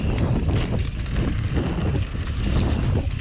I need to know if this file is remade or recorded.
recorded